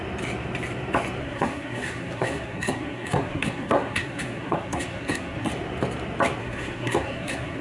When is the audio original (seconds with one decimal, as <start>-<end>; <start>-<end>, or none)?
0.0-1.2; 5.5-6.4